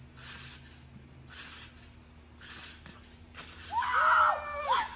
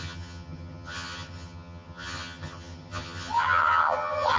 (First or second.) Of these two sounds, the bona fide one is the first